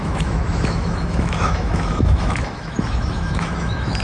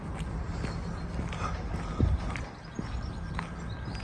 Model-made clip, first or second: first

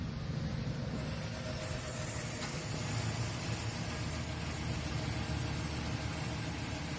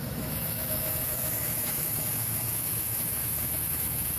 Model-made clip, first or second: second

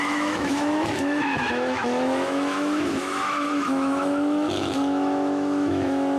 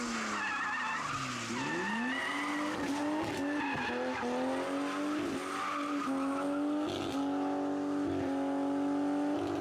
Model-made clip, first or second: first